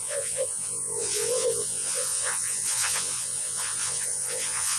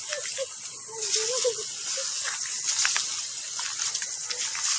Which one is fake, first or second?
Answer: first